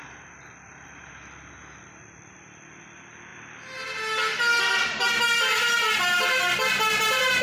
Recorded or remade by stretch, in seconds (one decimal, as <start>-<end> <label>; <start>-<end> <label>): 0.0-7.4 recorded